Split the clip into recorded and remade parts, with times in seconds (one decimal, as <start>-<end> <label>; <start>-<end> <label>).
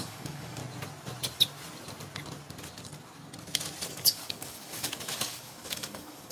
0.0-0.6 remade; 0.6-3.9 recorded; 3.9-6.3 remade